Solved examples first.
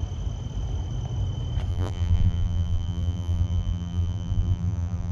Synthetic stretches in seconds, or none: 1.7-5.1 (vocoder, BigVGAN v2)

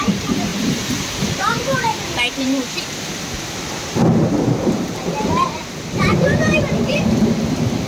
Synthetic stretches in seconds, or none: 0.0-7.9 (vocoder, BigVGAN v2)

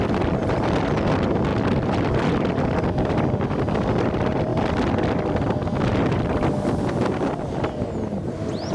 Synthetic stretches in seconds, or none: none